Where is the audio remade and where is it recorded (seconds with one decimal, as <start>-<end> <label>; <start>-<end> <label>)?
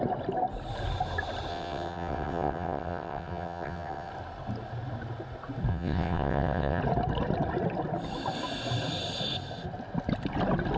0.0-1.5 recorded; 1.5-4.1 remade; 4.1-5.7 recorded; 5.7-6.8 remade; 6.8-10.8 recorded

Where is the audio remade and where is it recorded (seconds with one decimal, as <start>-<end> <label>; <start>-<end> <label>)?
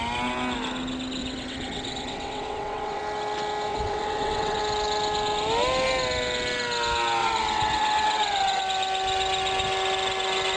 0.0-1.2 recorded; 1.2-3.0 remade; 3.0-3.7 recorded; 3.7-4.6 remade; 4.6-7.2 recorded; 7.2-8.6 remade; 8.6-10.6 recorded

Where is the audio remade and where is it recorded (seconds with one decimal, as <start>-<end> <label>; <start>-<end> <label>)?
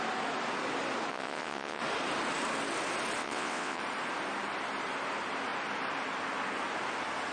0.0-1.1 recorded; 1.1-1.8 remade; 1.8-3.2 recorded; 3.2-3.8 remade; 3.8-7.3 recorded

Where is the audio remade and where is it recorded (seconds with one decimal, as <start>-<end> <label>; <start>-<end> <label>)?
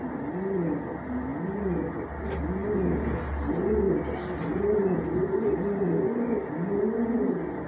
0.0-7.7 recorded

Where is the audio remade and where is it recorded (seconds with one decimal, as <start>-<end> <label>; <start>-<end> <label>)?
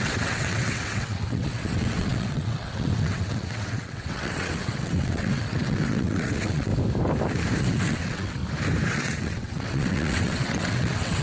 0.0-6.7 remade; 6.7-7.6 recorded; 7.6-8.4 remade; 8.4-8.9 recorded; 8.9-11.2 remade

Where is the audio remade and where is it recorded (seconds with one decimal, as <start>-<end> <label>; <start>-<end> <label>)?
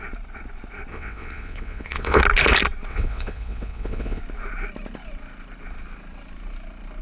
0.0-0.9 recorded; 0.9-2.2 remade; 2.2-2.9 recorded; 2.9-4.2 remade; 4.2-7.0 recorded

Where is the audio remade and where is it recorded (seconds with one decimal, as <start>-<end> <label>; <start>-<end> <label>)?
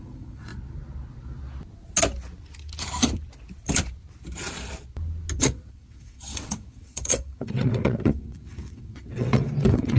0.0-0.5 remade; 0.5-5.4 recorded; 5.4-10.0 remade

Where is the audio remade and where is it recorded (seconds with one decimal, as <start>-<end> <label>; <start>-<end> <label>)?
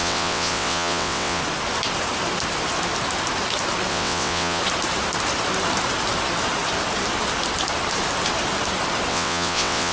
0.0-1.4 remade; 1.4-3.9 recorded; 3.9-4.6 remade; 4.6-9.1 recorded; 9.1-9.9 remade